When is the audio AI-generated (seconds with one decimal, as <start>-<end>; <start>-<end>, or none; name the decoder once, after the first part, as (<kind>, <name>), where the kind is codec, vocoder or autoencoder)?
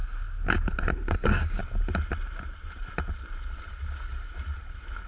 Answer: 1.1-1.6 (codec, DAC)